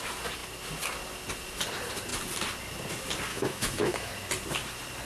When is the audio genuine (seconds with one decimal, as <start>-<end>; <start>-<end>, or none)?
0.0-3.3; 4.1-5.0